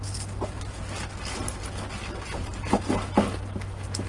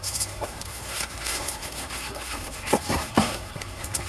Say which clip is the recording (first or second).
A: first